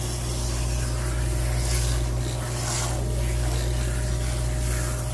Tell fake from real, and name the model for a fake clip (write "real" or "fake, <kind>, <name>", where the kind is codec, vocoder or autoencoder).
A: real